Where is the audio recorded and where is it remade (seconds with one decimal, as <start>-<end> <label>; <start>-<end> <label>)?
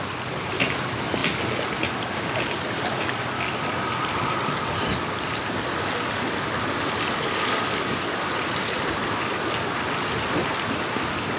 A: 0.0-11.4 recorded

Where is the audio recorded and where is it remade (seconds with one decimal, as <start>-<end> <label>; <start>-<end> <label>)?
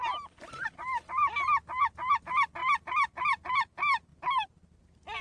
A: 0.0-2.6 recorded; 2.6-3.4 remade; 3.4-5.2 recorded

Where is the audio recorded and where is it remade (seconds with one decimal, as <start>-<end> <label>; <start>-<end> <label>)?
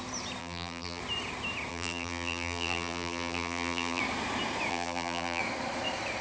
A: 0.0-0.4 recorded; 0.4-1.0 remade; 1.0-1.7 recorded; 1.7-4.0 remade; 4.0-4.7 recorded; 4.7-5.4 remade; 5.4-6.2 recorded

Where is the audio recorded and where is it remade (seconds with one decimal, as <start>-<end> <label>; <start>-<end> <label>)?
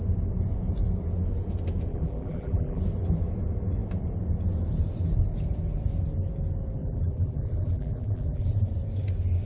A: 0.0-1.9 recorded; 1.9-2.8 remade; 2.8-6.8 recorded; 6.8-8.5 remade; 8.5-9.5 recorded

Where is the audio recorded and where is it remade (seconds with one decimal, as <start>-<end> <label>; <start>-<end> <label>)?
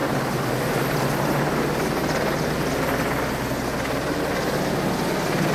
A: 0.0-0.5 remade; 0.5-5.5 recorded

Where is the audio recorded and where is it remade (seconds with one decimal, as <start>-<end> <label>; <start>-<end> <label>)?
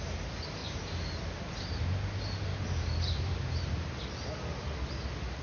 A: 0.0-0.6 recorded; 0.6-1.3 remade; 1.3-2.5 recorded; 2.5-4.0 remade; 4.0-5.4 recorded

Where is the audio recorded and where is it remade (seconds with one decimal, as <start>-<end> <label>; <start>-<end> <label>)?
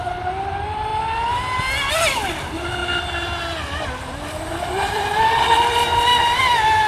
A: 0.0-0.9 remade; 0.9-1.9 recorded; 1.9-2.8 remade; 2.8-3.7 recorded; 3.7-6.1 remade; 6.1-6.9 recorded